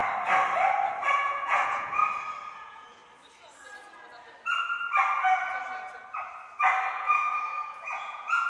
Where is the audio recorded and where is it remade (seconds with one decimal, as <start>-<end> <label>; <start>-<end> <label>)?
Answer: 0.0-1.1 recorded; 1.1-2.0 remade; 2.0-2.6 recorded; 2.6-3.0 remade; 3.0-6.9 recorded; 6.9-8.5 remade